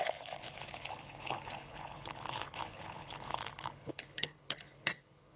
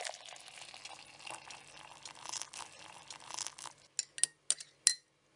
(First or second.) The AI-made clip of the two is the first